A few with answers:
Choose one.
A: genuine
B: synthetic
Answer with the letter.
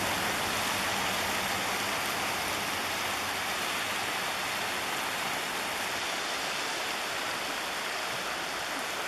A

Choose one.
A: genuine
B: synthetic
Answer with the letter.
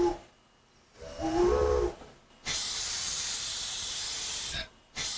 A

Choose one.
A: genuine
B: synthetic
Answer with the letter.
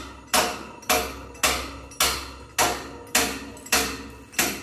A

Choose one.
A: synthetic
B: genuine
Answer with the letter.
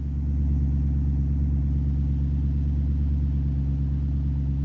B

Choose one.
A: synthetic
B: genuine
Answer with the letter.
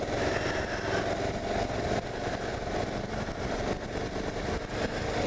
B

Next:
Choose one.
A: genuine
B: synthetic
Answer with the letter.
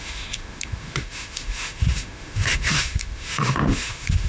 B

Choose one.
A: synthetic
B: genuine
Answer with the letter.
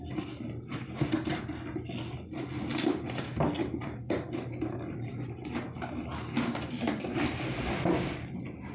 B